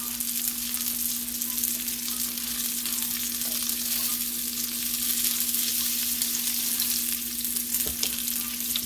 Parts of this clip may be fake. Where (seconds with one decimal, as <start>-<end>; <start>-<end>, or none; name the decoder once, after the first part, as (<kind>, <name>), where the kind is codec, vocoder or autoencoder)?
none